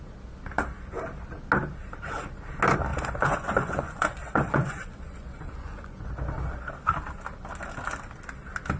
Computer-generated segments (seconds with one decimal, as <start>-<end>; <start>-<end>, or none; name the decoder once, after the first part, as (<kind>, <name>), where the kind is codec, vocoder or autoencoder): 2.9-6.1 (vocoder, Vocos)